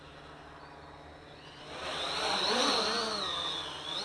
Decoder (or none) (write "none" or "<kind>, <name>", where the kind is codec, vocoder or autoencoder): none